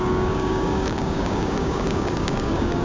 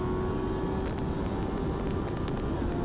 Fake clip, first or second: first